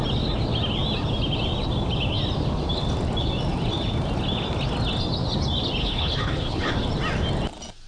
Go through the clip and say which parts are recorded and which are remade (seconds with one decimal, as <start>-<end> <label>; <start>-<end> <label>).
0.0-5.8 recorded; 5.8-6.7 remade; 6.7-7.9 recorded